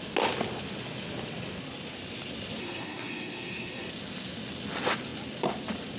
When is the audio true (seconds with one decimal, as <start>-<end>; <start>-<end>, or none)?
0.0-2.6; 3.9-6.0